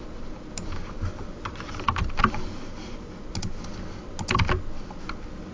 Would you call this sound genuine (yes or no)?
yes